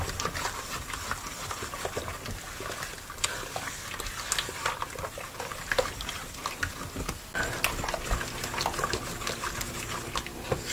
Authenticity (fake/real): real